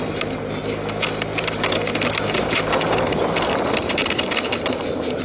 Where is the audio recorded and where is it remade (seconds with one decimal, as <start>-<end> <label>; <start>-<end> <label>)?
0.0-5.2 recorded